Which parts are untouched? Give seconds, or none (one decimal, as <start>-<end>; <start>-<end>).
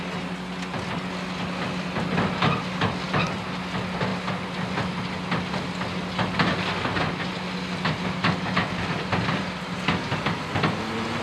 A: 0.0-11.2